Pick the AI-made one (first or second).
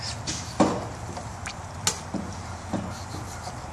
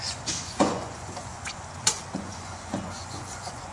second